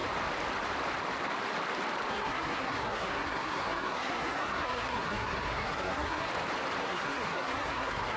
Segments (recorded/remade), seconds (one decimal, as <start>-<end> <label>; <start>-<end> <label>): 0.0-2.1 recorded; 2.1-6.3 remade; 6.3-6.8 recorded; 6.8-8.2 remade